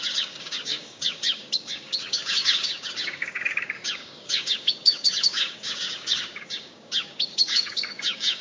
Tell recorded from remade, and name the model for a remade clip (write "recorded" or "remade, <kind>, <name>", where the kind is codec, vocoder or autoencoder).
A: remade, codec, DAC